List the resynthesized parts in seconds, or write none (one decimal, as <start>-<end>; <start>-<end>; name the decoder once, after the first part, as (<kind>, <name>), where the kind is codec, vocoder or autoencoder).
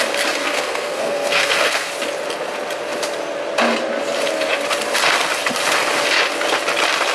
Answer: 0.4-1.9 (codec, SNAC)